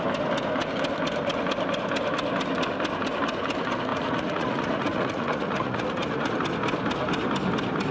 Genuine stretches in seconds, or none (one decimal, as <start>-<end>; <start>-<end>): 0.0-3.9; 6.3-7.9